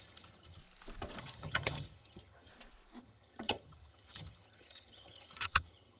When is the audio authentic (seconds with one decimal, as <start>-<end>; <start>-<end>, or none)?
0.6-1.2; 2.5-3.0